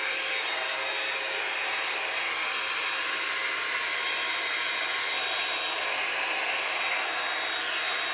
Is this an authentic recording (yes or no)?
yes